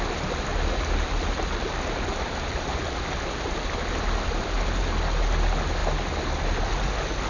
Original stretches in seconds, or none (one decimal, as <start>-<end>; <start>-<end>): 0.0-7.3